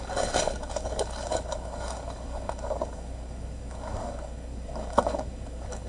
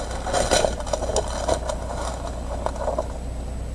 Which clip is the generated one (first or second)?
first